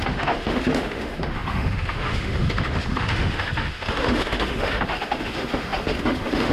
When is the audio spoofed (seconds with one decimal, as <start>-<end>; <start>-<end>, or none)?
0.0-6.5